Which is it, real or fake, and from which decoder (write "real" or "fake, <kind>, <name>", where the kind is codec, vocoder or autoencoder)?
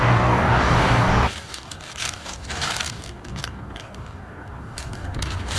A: fake, codec, DAC